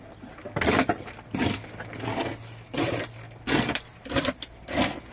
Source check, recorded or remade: recorded